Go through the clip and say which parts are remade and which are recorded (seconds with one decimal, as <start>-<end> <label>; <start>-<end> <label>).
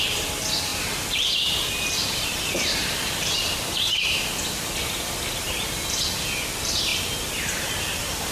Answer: 0.0-0.7 recorded; 0.7-3.7 remade; 3.7-8.3 recorded